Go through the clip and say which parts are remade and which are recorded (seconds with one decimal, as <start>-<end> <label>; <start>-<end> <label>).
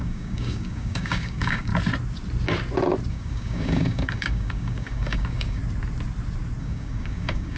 0.0-1.7 remade; 1.7-3.1 recorded; 3.1-5.6 remade; 5.6-6.6 recorded; 6.6-7.6 remade